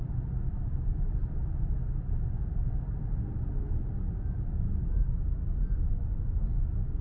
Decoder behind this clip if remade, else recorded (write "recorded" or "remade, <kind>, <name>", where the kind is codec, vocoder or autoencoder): recorded